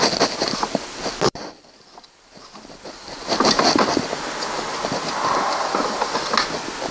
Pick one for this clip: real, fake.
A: real